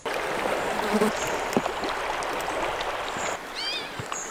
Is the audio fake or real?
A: real